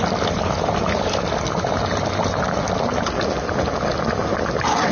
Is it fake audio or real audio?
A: real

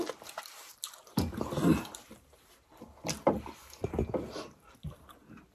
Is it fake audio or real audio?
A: real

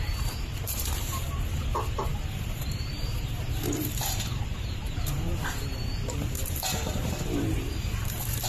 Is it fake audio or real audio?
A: fake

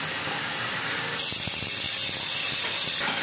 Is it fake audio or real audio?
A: real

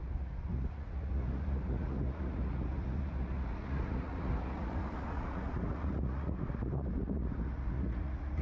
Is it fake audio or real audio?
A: fake